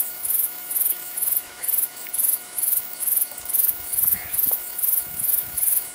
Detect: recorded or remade remade